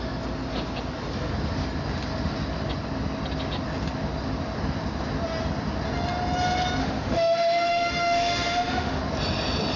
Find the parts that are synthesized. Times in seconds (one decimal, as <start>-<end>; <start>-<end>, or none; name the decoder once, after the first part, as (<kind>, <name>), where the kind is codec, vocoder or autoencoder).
6.8-9.0 (autoencoder, DAC-VAE)